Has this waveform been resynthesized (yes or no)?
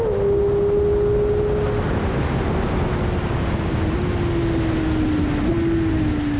no